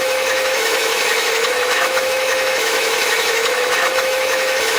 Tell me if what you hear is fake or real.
fake